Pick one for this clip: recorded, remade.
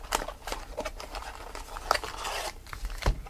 recorded